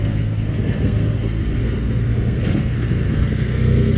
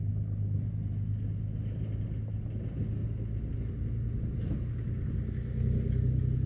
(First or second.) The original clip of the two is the second